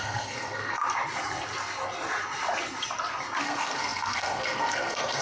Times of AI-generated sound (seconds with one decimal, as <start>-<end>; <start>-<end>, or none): 0.0-0.8; 3.4-5.2